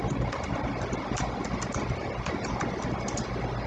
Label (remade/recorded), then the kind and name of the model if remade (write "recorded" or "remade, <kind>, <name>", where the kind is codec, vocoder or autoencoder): recorded